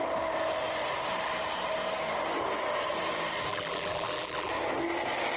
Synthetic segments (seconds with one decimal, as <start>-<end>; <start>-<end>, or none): 3.5-4.5